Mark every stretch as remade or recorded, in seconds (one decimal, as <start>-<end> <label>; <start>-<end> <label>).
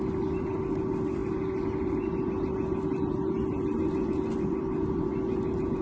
0.0-5.8 recorded